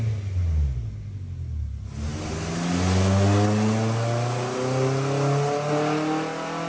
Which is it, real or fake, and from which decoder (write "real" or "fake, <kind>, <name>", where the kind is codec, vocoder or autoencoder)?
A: real